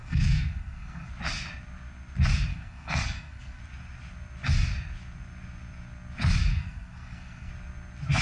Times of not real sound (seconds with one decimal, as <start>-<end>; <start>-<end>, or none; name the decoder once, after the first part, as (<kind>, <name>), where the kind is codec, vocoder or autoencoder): 0.0-1.1 (codec, SNAC); 2.5-3.6; 6.5-7.5